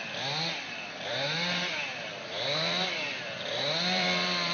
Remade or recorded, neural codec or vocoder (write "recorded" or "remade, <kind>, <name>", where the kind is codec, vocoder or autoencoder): remade, vocoder, BigVGAN v2